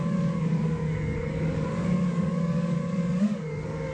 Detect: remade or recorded remade